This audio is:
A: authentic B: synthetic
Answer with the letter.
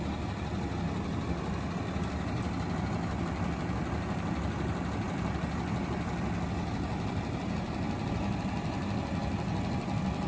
A